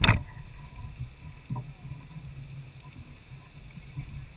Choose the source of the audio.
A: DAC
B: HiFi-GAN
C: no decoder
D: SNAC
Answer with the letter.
C